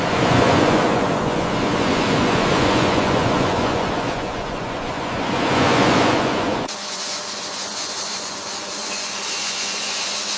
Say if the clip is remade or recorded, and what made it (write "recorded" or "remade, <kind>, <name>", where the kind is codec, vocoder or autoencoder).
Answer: remade, vocoder, Vocos